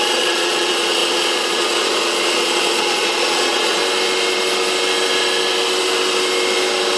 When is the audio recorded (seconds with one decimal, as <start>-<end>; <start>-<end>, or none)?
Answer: 3.8-7.0